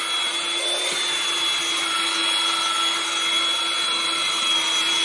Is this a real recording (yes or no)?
yes